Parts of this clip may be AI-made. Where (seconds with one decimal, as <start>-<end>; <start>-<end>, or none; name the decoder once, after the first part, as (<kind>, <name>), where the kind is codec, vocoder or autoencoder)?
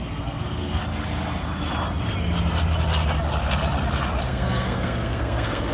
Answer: 0.0-0.8 (codec, SNAC); 4.2-5.7